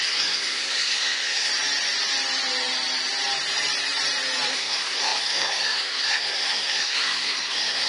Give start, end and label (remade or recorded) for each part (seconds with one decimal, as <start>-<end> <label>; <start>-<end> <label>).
0.0-1.5 remade; 1.5-4.5 recorded; 4.5-7.9 remade